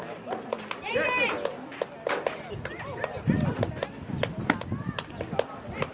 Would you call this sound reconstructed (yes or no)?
no